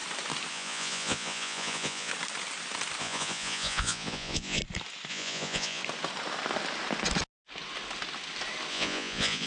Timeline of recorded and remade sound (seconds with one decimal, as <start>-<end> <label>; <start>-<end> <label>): 0.0-0.5 recorded; 0.5-2.1 remade; 2.1-3.0 recorded; 3.0-4.6 remade; 4.6-5.1 recorded; 5.1-5.8 remade; 5.8-8.7 recorded; 8.7-9.5 remade